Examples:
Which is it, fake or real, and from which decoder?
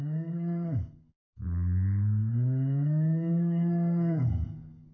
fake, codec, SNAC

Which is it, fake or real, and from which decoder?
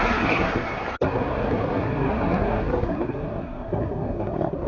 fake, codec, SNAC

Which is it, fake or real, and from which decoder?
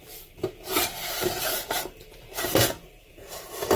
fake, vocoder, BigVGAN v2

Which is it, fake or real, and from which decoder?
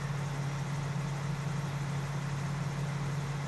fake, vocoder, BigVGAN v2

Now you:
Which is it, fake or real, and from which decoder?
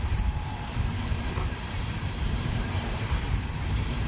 fake, vocoder, BigVGAN v2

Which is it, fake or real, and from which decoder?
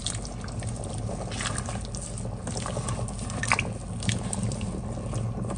real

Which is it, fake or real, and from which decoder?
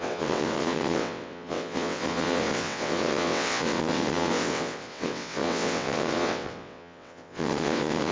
fake, vocoder, WaveNeXt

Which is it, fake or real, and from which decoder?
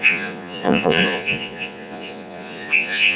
fake, vocoder, Vocos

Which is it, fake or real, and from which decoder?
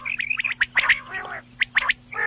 real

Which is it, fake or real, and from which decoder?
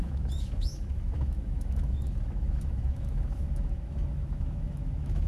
fake, autoencoder, DAC-VAE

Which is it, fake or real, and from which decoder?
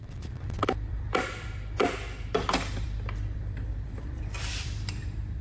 fake, vocoder, BigVGAN v2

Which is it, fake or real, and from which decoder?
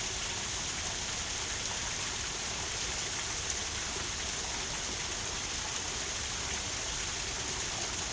real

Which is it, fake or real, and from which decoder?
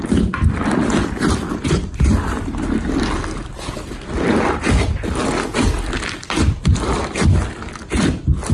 fake, vocoder, BigVGAN v2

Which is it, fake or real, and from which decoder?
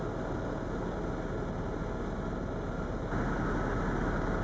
real